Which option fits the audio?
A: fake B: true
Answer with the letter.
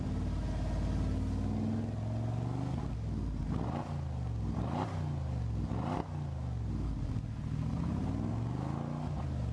B